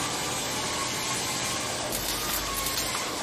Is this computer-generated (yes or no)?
no